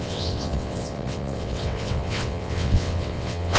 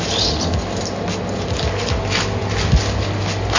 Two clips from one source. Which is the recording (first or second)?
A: second